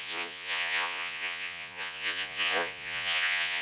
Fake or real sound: fake